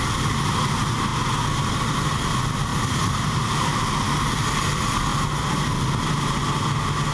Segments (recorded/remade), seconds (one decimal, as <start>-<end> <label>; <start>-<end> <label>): 0.0-2.7 recorded; 2.7-3.8 remade; 3.8-7.1 recorded